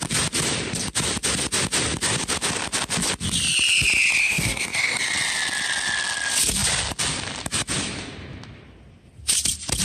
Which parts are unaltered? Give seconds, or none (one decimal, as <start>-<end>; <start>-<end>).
0.0-4.2; 5.0-9.8